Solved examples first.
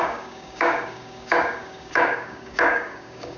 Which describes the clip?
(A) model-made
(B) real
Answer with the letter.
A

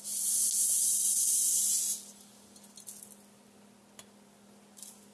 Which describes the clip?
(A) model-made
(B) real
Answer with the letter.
B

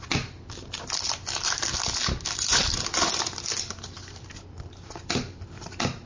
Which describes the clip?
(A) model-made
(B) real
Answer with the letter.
B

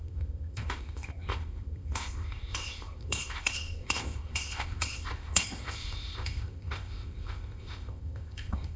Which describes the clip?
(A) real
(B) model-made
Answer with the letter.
B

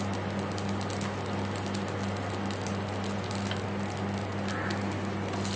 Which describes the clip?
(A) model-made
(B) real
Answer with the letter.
B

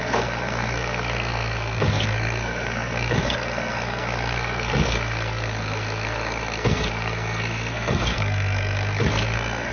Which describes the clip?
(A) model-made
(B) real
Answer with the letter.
A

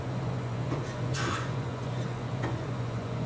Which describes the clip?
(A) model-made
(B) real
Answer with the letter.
A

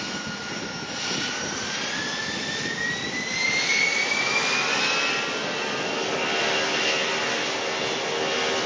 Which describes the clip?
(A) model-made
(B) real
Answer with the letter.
B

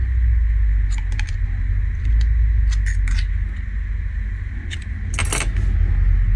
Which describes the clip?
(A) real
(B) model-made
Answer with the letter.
A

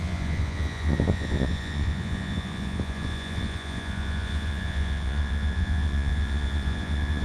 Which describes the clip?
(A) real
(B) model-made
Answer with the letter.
B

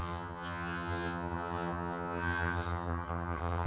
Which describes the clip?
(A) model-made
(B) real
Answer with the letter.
A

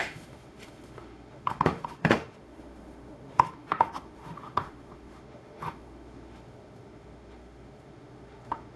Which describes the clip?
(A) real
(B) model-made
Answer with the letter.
B